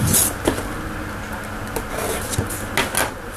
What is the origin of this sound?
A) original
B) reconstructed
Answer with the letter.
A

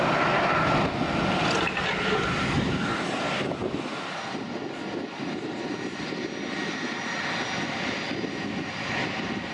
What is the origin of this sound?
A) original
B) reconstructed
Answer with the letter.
B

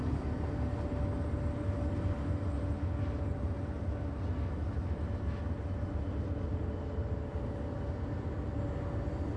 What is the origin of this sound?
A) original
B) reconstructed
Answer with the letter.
A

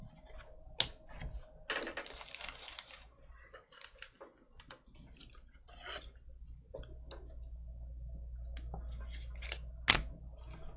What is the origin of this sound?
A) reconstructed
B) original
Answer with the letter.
B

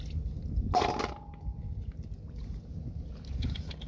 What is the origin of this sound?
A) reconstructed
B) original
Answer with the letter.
B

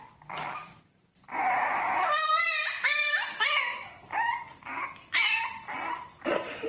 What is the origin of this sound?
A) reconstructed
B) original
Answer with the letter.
A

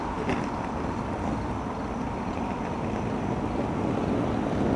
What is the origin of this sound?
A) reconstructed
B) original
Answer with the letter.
B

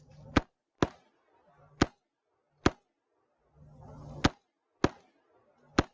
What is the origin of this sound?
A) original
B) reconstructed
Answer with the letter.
A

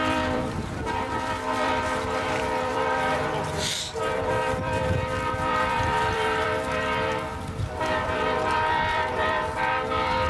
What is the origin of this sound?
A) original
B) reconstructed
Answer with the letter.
B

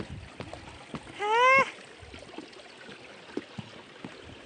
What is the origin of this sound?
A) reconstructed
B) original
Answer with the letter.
B